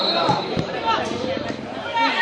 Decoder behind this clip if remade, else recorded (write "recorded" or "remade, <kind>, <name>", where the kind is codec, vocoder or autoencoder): recorded